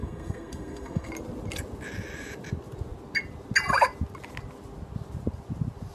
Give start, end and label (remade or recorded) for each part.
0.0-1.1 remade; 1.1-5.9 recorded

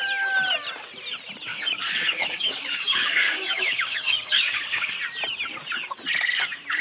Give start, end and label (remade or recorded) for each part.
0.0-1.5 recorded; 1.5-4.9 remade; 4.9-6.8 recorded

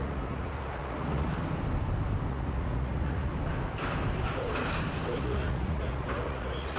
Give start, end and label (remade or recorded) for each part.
0.0-1.3 remade; 1.3-2.3 recorded; 2.3-3.3 remade; 3.3-5.2 recorded; 5.2-6.8 remade

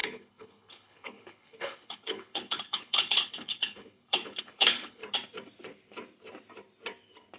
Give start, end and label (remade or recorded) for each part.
0.0-5.0 remade; 5.0-7.4 recorded

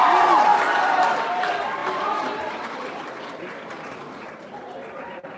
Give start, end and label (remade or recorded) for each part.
0.0-0.5 remade; 0.5-1.4 recorded; 1.4-5.4 remade

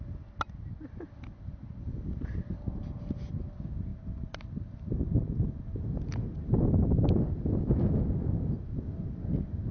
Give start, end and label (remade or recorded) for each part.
0.0-3.9 recorded; 3.9-5.8 remade; 5.8-9.7 recorded

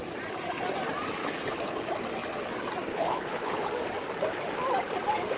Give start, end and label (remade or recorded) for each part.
0.0-1.2 recorded; 1.2-1.8 remade; 1.8-2.9 recorded; 2.9-3.7 remade; 3.7-5.4 recorded

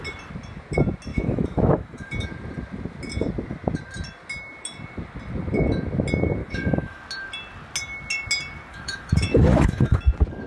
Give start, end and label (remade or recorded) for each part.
0.0-1.1 recorded; 1.1-2.1 remade; 2.1-6.4 recorded; 6.4-7.0 remade; 7.0-8.7 recorded; 8.7-10.0 remade; 10.0-10.5 recorded